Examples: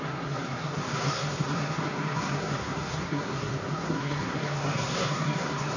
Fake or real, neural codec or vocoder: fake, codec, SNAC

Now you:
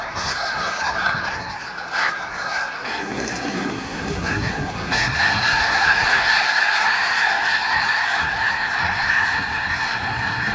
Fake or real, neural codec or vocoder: fake, codec, SNAC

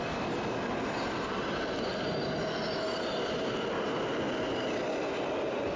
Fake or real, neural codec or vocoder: real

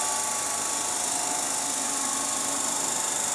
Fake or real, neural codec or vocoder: real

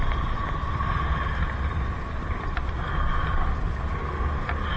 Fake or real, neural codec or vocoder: real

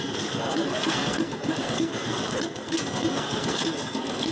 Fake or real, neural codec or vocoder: fake, codec, SNAC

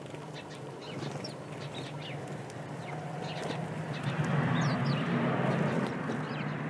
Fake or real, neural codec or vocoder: real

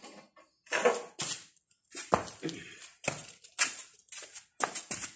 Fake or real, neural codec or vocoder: real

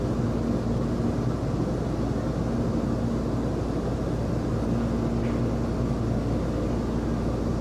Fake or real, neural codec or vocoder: real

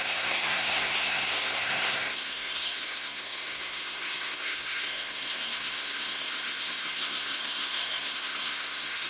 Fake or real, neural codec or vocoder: fake, codec, SNAC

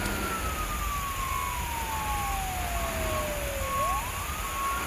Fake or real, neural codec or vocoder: real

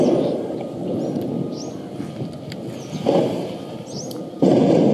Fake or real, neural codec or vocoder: real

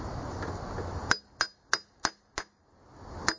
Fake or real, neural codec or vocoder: real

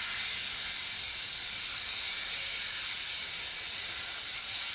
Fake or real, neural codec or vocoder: real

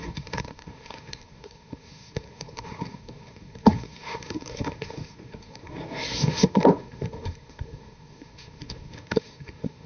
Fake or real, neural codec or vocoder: fake, codec, SNAC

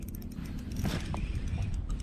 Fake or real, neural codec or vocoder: real